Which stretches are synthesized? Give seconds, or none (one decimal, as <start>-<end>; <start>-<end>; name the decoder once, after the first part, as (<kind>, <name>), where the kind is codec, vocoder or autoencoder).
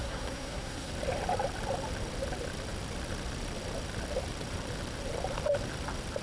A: 0.0-0.9 (codec, SNAC)